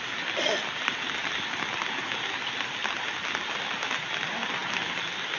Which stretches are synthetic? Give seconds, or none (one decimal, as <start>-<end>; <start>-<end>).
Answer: none